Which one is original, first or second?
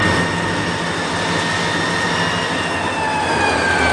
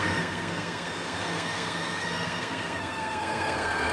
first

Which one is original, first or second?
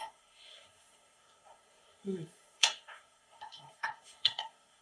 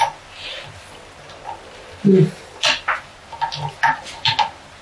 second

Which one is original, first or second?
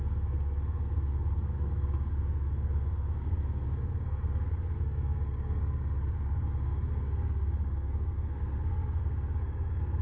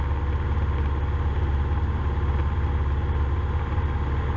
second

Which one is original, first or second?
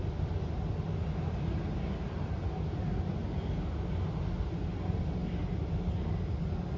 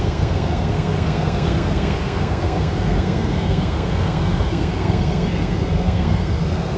first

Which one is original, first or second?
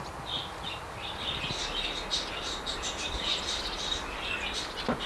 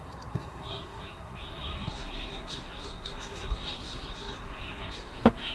first